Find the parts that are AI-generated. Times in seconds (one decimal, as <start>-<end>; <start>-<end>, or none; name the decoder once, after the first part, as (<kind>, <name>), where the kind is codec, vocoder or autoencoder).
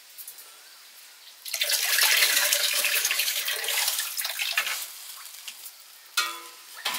2.2-3.4 (codec, DAC)